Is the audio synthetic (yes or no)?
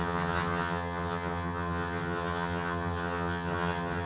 yes